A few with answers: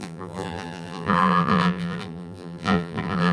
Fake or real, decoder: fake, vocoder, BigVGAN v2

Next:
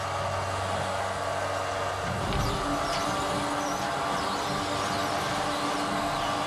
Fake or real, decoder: real